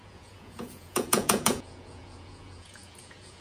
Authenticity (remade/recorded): remade